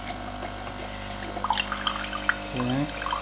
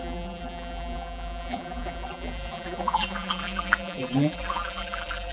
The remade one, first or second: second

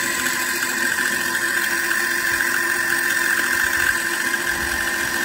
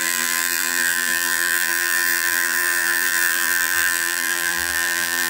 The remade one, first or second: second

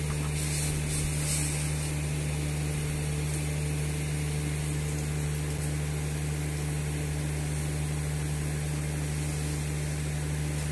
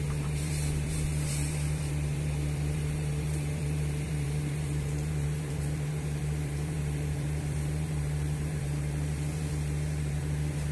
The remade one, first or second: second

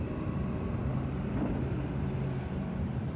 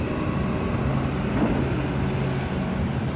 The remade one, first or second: first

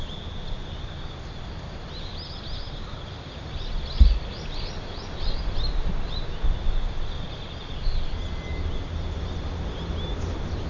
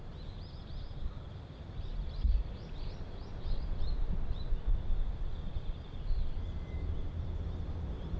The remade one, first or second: second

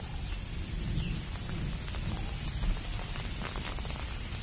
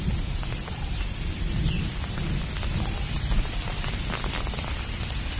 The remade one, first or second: second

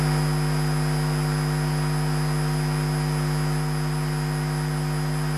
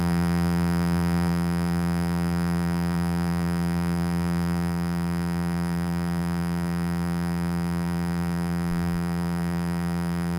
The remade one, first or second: second